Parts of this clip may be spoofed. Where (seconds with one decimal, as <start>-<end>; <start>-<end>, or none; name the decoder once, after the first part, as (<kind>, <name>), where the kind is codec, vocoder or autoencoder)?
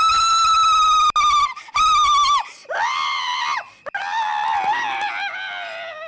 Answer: none